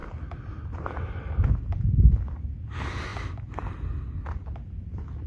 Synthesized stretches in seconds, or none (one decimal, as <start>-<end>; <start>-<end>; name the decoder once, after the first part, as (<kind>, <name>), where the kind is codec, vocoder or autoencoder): none